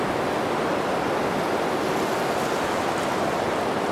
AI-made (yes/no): no